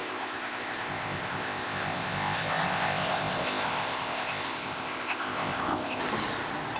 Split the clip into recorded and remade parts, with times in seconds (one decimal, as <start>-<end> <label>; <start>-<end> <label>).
0.0-6.0 remade; 6.0-6.8 recorded